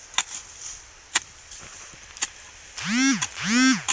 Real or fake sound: real